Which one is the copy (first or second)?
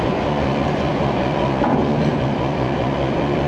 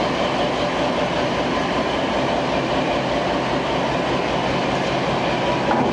first